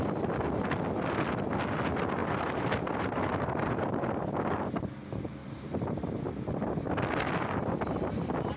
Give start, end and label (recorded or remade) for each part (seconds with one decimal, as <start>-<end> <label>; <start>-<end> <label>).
0.0-2.2 recorded; 2.2-4.0 remade; 4.0-5.4 recorded; 5.4-6.1 remade; 6.1-8.6 recorded